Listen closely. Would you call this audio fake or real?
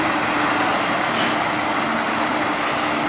real